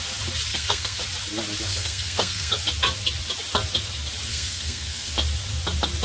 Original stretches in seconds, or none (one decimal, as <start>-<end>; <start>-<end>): 0.0-0.5; 1.0-1.7; 2.6-4.3; 5.1-6.0